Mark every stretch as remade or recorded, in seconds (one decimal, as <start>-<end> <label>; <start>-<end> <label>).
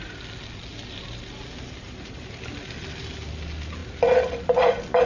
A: 0.0-0.7 recorded; 0.7-1.4 remade; 1.4-3.8 recorded; 3.8-4.3 remade; 4.3-5.1 recorded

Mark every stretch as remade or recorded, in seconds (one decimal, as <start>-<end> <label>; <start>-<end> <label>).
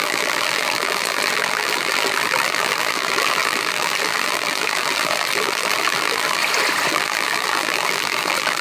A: 0.0-6.4 remade; 6.4-6.9 recorded; 6.9-8.6 remade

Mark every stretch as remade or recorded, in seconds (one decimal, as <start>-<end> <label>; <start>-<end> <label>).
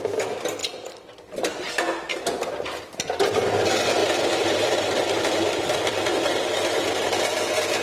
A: 0.0-0.6 recorded; 0.6-1.7 remade; 1.7-2.1 recorded; 2.1-3.4 remade; 3.4-4.0 recorded; 4.0-6.7 remade; 6.7-7.8 recorded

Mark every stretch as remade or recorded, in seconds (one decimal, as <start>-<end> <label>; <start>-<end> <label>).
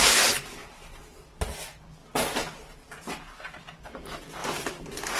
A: 0.0-0.6 recorded; 0.6-1.5 remade; 1.5-5.2 recorded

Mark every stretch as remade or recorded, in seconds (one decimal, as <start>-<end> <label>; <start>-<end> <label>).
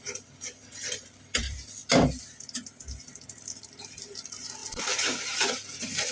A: 0.0-1.8 remade; 1.8-2.9 recorded; 2.9-4.6 remade; 4.6-6.1 recorded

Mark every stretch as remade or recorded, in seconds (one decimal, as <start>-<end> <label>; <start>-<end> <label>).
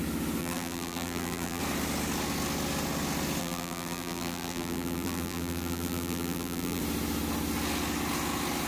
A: 0.0-0.4 recorded; 0.4-1.6 remade; 1.6-3.4 recorded; 3.4-6.8 remade; 6.8-8.7 recorded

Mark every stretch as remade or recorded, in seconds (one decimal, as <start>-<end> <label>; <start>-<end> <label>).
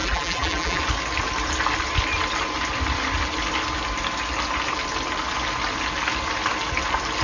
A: 0.0-0.8 remade; 0.8-7.2 recorded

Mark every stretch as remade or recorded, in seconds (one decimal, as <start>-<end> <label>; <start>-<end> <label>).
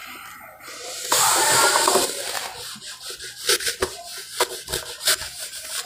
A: 0.0-0.6 recorded; 0.6-2.5 remade; 2.5-3.6 recorded; 3.6-4.1 remade; 4.1-5.4 recorded; 5.4-5.9 remade